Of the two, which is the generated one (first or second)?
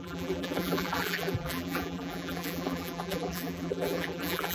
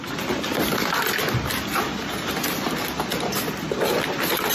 first